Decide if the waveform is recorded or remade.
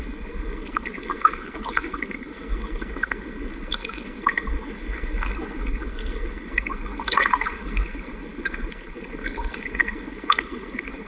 remade